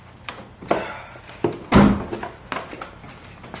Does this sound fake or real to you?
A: real